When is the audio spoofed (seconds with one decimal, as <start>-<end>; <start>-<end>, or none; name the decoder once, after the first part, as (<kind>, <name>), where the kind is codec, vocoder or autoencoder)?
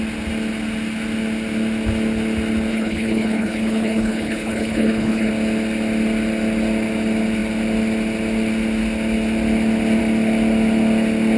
2.7-5.3 (codec, HILCodec)